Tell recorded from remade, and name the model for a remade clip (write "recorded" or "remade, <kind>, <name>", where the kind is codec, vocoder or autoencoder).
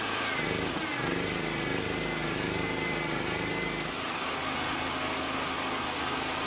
recorded